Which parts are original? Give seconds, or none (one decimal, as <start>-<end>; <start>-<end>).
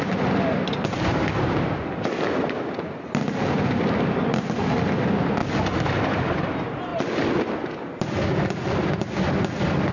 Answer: 0.0-9.9